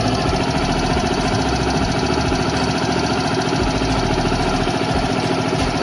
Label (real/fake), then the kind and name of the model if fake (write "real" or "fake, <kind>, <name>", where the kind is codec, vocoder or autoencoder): real